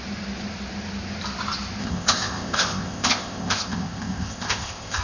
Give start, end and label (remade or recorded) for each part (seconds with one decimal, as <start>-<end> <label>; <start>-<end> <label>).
0.0-1.8 recorded; 1.8-5.0 remade